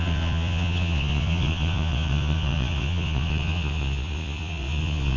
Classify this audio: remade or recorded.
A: remade